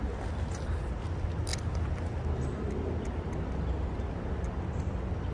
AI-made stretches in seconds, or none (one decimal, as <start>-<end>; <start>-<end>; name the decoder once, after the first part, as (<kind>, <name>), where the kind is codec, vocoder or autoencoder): none